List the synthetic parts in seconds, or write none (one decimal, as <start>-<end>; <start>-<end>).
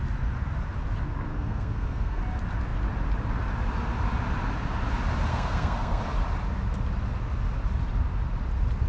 1.3-2.2; 5.3-6.0